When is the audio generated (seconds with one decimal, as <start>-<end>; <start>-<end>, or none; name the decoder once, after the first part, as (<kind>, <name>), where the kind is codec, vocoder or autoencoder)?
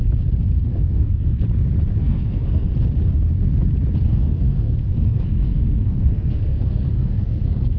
0.7-1.4 (codec, SNAC); 2.0-2.7; 4.1-7.8